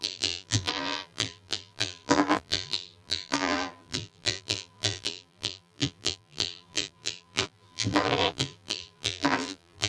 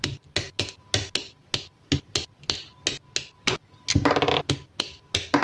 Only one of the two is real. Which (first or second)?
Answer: second